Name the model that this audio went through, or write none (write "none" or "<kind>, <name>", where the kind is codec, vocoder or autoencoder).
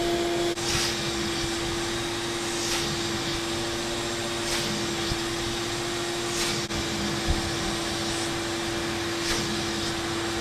none